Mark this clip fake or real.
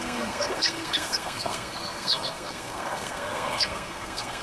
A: fake